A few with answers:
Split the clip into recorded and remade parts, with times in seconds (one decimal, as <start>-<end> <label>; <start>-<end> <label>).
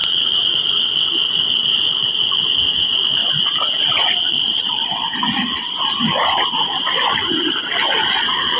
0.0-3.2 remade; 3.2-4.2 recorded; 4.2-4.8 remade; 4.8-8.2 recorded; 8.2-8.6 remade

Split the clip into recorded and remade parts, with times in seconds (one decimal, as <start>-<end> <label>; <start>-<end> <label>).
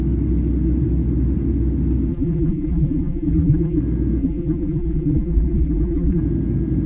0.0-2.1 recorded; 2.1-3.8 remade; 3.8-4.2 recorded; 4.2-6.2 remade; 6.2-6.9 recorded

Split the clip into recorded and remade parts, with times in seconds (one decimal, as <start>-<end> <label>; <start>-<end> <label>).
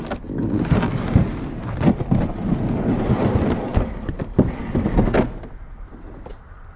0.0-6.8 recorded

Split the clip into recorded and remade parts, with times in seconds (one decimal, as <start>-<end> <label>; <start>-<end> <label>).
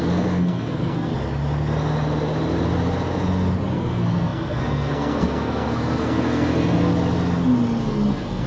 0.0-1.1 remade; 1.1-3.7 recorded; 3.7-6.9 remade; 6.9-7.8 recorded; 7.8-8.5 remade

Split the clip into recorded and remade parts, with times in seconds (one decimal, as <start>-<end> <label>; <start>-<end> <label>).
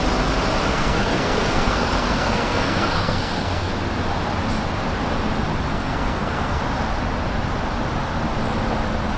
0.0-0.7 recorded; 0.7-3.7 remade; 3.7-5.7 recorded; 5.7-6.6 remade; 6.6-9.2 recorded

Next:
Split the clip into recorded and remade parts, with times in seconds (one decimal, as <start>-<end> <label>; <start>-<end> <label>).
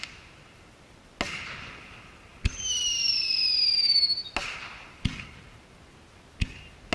0.0-6.9 recorded